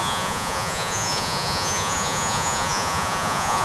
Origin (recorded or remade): remade